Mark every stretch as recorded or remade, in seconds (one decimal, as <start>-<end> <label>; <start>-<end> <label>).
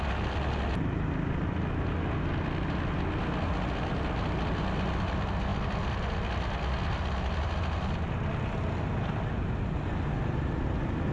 0.0-11.1 recorded